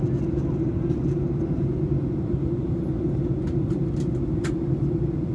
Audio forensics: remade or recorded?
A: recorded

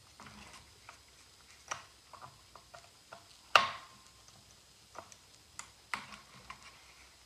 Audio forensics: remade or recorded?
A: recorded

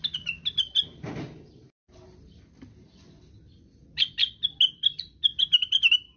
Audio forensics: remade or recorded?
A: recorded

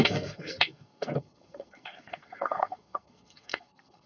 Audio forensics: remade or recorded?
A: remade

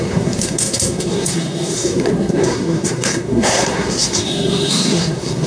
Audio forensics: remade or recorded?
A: remade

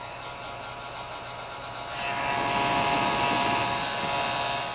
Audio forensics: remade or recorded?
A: recorded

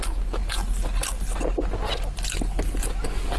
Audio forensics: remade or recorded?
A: recorded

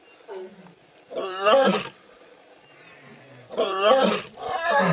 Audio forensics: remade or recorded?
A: recorded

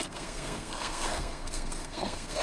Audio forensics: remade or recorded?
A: remade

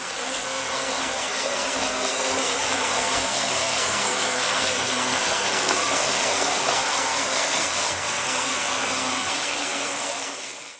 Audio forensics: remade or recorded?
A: remade